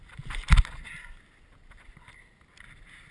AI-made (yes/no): no